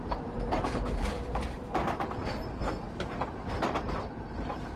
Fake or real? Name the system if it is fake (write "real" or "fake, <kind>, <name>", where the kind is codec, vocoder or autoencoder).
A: fake, vocoder, BigVGAN v2